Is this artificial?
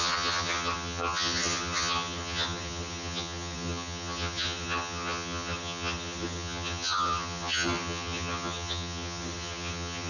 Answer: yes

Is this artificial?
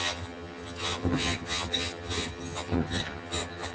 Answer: yes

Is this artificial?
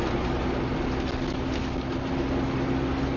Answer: no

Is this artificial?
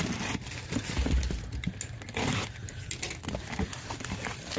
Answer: no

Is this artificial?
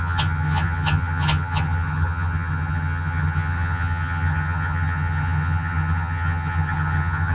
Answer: yes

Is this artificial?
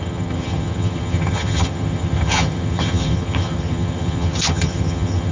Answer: yes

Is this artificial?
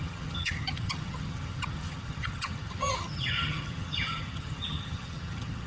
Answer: yes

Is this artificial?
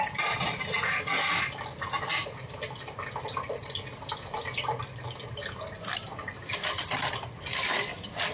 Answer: no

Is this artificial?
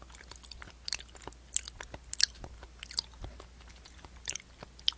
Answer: no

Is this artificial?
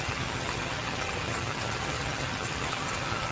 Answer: yes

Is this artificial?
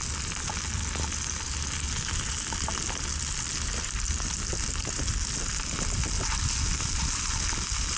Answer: no